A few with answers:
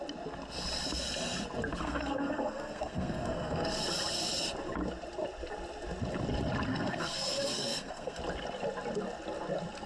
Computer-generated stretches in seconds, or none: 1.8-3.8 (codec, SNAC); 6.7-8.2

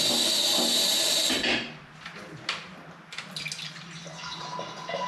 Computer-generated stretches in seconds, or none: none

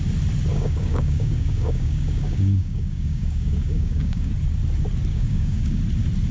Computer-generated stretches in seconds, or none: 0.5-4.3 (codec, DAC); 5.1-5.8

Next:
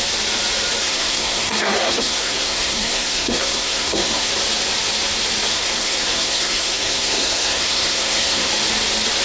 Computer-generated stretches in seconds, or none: 0.8-4.3 (codec, SNAC); 5.5-8.5